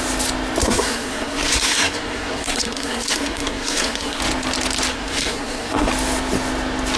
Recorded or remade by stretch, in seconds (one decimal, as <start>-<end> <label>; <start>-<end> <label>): 0.0-0.6 recorded; 0.6-4.2 remade; 4.2-4.9 recorded; 4.9-5.9 remade; 5.9-7.0 recorded